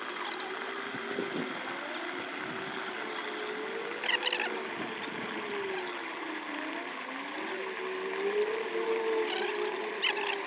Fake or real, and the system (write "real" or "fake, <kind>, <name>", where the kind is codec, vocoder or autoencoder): real